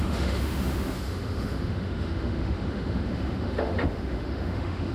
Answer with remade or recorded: remade